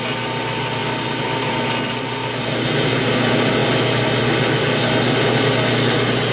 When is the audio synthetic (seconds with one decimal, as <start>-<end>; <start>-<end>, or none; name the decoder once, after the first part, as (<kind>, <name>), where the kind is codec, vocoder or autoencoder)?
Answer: none